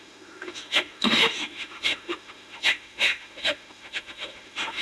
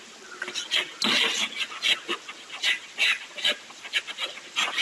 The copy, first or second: first